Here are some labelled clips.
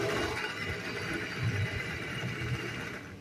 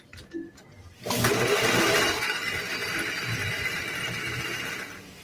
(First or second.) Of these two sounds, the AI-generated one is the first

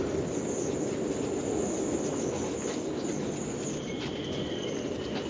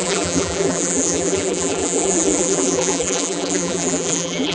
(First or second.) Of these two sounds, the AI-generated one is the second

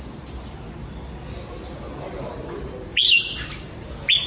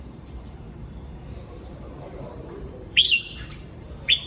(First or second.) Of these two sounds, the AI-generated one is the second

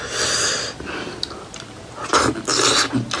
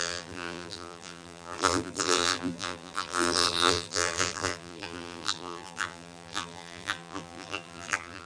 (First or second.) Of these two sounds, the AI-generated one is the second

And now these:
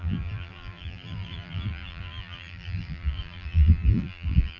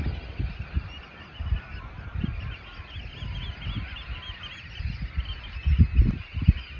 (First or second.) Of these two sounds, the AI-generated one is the first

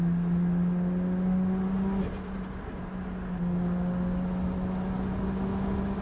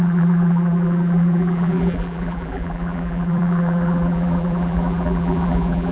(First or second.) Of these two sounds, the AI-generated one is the second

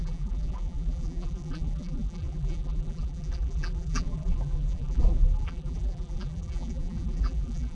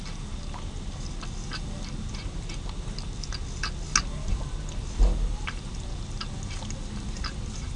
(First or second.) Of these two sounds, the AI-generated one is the first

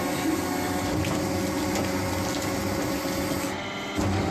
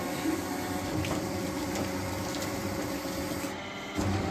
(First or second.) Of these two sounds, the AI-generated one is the second